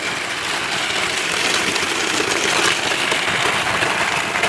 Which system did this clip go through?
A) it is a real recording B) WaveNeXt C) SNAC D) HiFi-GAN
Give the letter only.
A